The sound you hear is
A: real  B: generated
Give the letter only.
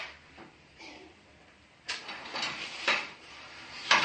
B